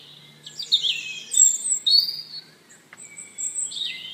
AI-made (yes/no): no